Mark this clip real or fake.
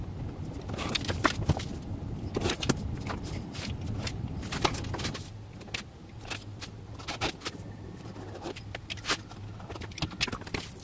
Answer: real